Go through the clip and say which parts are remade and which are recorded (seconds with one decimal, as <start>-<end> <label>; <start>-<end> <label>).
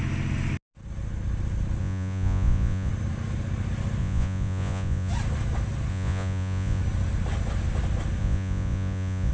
0.0-1.8 recorded; 1.8-2.9 remade; 2.9-4.0 recorded; 4.0-5.1 remade; 5.1-5.9 recorded; 5.9-6.8 remade; 6.8-8.2 recorded; 8.2-9.3 remade